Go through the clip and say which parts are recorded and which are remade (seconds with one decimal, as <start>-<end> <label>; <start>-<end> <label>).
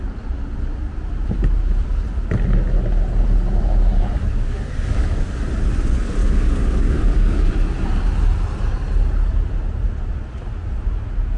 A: 0.0-4.3 recorded; 4.3-5.4 remade; 5.4-6.2 recorded; 6.2-7.5 remade; 7.5-11.4 recorded